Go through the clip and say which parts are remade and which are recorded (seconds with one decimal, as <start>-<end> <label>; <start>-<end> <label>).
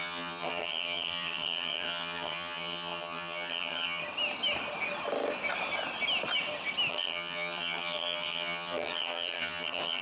0.0-4.0 remade; 4.0-6.9 recorded; 6.9-10.0 remade